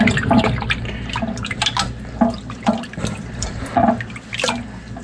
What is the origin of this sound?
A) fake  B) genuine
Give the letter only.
B